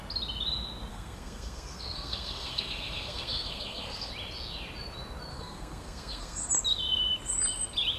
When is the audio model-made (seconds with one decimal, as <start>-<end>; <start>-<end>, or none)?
0.9-4.1; 5.3-6.5